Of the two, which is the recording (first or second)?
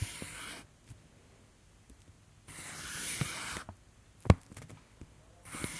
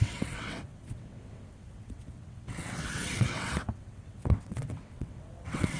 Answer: first